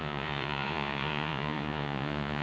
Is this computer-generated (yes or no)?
yes